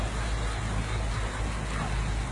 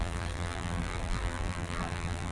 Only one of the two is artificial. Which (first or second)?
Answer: second